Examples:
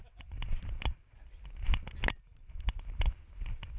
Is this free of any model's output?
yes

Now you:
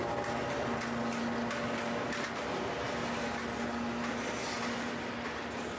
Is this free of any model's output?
yes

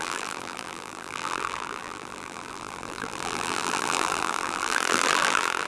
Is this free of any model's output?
no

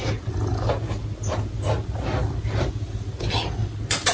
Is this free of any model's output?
yes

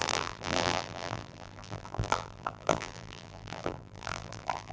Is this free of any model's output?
no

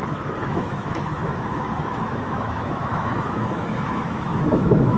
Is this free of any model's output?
no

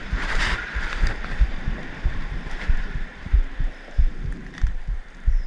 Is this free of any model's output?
no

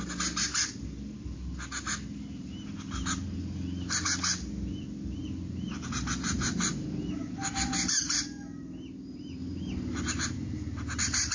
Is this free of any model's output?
yes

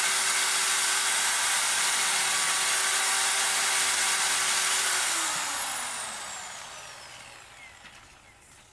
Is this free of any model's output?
yes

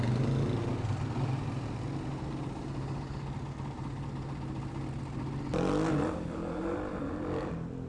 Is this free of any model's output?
yes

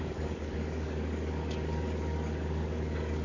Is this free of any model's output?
no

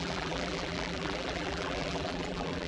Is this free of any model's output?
no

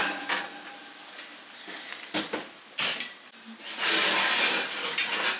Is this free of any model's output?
yes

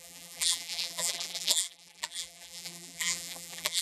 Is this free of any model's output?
no